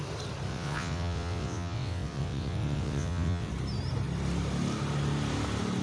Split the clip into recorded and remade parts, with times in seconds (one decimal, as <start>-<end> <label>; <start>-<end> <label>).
0.0-0.5 recorded; 0.5-3.5 remade; 3.5-5.8 recorded